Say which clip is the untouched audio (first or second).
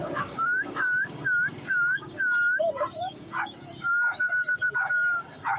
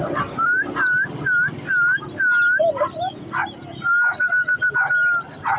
second